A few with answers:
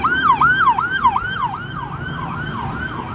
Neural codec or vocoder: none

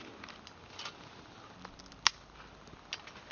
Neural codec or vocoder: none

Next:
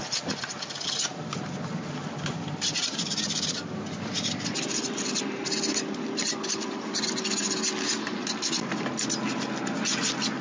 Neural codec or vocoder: none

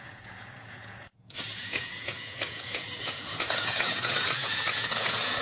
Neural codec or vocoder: vocoder, Vocos